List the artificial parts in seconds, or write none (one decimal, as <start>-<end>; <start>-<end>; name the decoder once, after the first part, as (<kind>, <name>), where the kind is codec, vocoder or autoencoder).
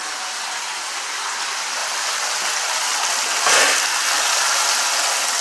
none